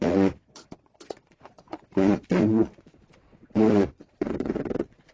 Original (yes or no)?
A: no